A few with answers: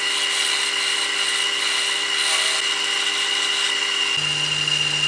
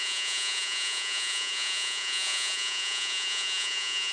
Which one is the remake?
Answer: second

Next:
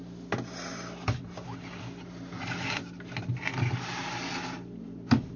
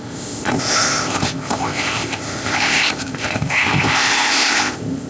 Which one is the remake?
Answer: second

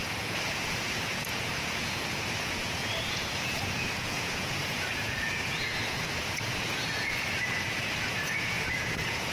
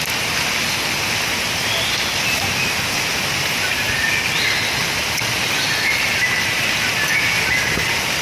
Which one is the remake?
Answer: first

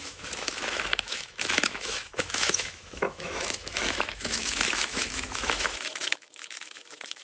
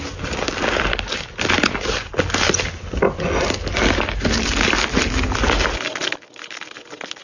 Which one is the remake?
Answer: first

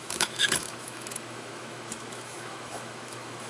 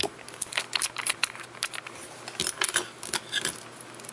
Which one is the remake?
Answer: first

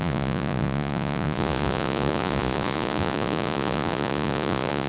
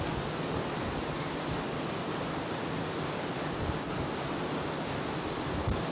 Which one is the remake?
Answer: first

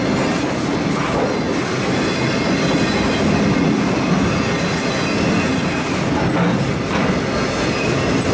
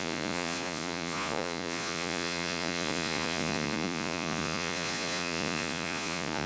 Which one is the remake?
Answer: second